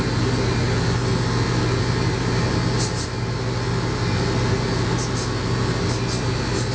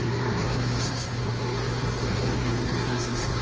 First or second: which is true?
first